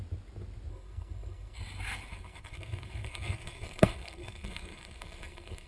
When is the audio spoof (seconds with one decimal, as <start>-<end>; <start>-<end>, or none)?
0.7-1.6; 2.1-5.7